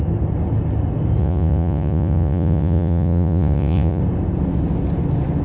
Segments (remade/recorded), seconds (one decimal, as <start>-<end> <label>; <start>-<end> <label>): 0.0-1.2 recorded; 1.2-4.0 remade; 4.0-5.4 recorded